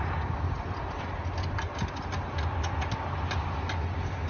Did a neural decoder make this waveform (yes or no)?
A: no